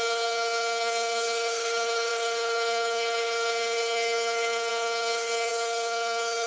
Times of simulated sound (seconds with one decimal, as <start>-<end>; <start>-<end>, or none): 0.0-6.5